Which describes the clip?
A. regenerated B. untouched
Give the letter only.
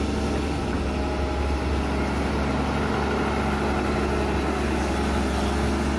B